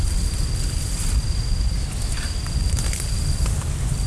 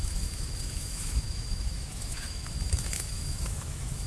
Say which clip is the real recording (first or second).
first